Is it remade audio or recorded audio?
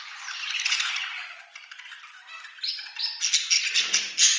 recorded